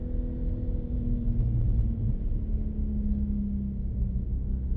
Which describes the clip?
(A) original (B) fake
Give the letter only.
A